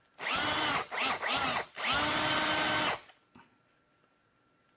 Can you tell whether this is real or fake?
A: real